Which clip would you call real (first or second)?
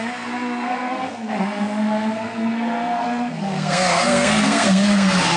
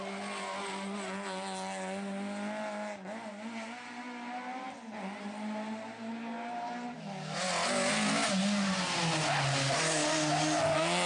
second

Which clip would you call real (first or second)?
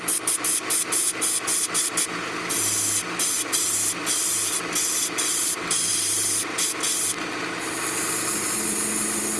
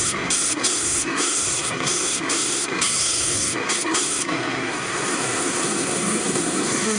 first